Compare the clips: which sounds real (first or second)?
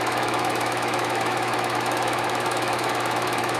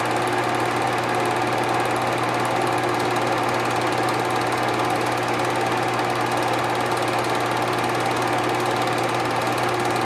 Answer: second